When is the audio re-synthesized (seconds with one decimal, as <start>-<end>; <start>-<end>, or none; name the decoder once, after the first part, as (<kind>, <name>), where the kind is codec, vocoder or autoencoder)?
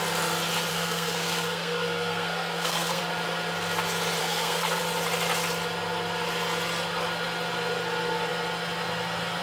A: 0.7-3.0 (codec, SNAC); 4.2-4.8